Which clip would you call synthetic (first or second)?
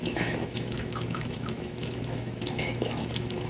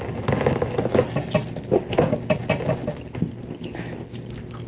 first